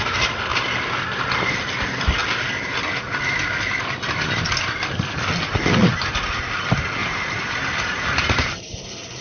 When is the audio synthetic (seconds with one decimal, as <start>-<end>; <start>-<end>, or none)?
7.0-9.2

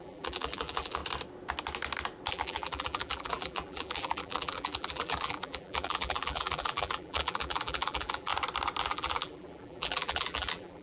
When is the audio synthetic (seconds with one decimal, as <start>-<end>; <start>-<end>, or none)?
0.0-1.0; 2.3-8.3; 8.8-10.8

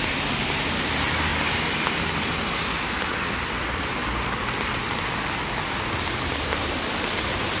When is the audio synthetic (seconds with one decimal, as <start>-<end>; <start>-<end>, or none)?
none

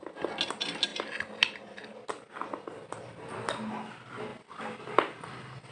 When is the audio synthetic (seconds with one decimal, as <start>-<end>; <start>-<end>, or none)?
none